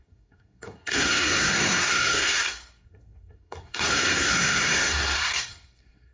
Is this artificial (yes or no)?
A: yes